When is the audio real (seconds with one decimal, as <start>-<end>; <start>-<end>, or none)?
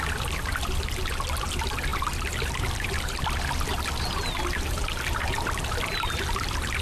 0.0-6.8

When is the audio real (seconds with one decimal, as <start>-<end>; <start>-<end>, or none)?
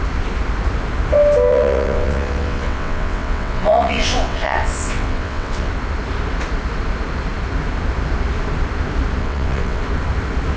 0.0-1.5; 5.7-9.2; 9.8-10.6